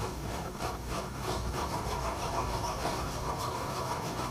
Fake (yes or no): yes